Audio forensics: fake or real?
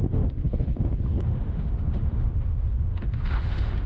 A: fake